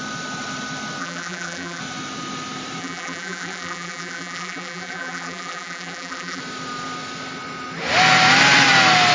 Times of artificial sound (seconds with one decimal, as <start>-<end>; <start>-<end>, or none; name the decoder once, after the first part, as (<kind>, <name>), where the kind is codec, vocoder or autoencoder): 1.0-1.8 (vocoder, BigVGAN v2); 2.8-6.4